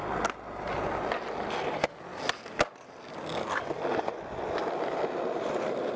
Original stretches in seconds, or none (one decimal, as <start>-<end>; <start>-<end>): 0.0-6.0